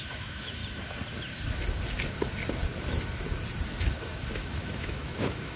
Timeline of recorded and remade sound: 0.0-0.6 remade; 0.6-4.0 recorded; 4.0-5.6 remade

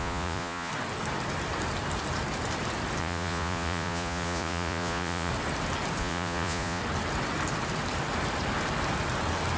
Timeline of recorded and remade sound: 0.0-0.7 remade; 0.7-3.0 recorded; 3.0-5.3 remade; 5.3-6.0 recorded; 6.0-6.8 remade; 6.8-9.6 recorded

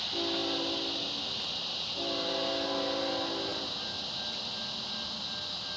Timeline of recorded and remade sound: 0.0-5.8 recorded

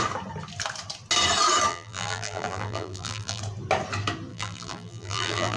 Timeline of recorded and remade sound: 0.0-1.7 recorded; 1.7-3.4 remade; 3.4-4.3 recorded; 4.3-5.6 remade

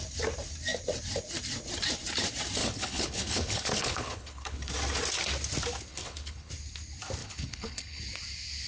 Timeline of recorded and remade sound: 0.0-2.6 recorded; 2.6-4.7 remade; 4.7-5.9 recorded; 5.9-6.5 remade; 6.5-7.2 recorded; 7.2-8.0 remade; 8.0-8.7 recorded

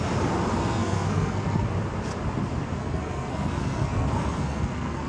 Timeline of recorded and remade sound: 0.0-0.6 recorded; 0.6-1.7 remade; 1.7-2.8 recorded; 2.8-5.1 remade

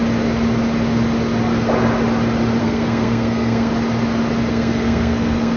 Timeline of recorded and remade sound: 0.0-2.6 recorded; 2.6-3.7 remade; 3.7-4.5 recorded; 4.5-5.6 remade